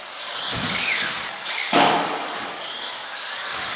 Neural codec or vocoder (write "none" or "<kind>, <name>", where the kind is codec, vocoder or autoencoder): codec, DAC